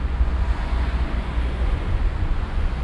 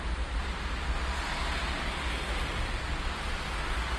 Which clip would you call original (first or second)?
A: second